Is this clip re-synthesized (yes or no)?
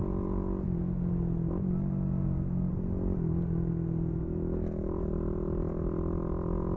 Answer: no